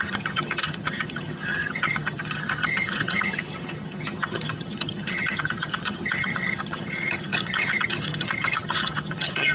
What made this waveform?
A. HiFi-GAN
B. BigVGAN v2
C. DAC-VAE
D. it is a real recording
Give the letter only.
A